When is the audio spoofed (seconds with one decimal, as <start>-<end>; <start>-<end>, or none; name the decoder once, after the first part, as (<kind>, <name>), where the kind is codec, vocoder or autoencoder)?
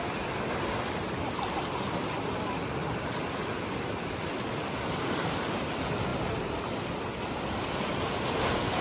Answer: none